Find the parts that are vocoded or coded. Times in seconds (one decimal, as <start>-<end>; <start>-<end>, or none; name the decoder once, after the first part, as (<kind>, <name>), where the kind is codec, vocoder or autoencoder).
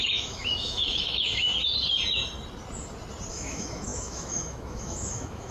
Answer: 0.0-1.5 (autoencoder, DAC-VAE); 3.3-5.5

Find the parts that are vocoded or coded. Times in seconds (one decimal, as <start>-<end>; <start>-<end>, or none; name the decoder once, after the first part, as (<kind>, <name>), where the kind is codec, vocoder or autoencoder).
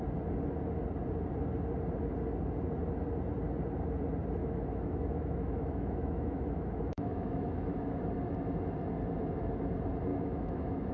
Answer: 4.4-8.0 (autoencoder, DAC-VAE); 10.1-10.9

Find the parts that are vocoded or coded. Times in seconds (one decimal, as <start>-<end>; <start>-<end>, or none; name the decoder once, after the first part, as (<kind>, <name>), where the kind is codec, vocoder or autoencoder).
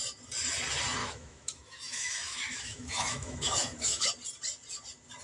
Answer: 1.0-4.1 (autoencoder, DAC-VAE)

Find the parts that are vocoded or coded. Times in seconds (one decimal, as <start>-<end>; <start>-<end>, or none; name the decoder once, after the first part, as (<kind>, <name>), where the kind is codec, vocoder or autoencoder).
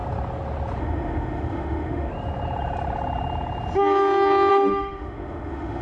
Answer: 0.8-2.1 (autoencoder, DAC-VAE); 4.5-5.8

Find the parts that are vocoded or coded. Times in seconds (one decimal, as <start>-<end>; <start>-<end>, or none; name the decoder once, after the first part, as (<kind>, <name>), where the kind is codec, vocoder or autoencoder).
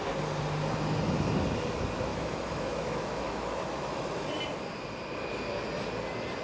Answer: 2.1-4.3 (autoencoder, DAC-VAE)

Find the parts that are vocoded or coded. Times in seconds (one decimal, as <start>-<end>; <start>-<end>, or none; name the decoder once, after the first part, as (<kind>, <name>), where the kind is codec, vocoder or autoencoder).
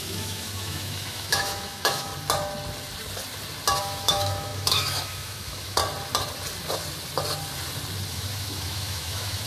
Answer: 0.0-2.1 (autoencoder, DAC-VAE); 3.8-5.8; 8.1-9.5